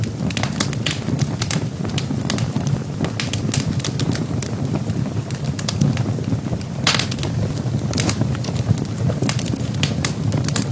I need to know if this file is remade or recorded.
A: recorded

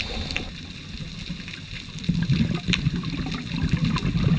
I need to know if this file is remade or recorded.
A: recorded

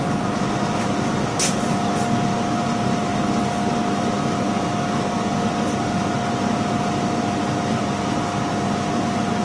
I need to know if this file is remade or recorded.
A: recorded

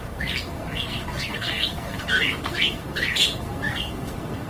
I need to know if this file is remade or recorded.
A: remade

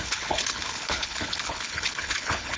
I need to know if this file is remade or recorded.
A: remade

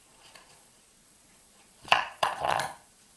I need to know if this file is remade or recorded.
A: remade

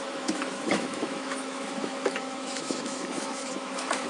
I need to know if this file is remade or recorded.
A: remade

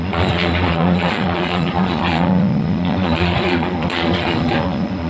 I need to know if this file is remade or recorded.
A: remade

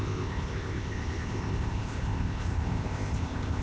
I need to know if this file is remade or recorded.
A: remade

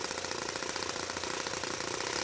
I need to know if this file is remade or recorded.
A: recorded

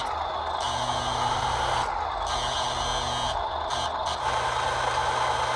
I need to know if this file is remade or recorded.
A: recorded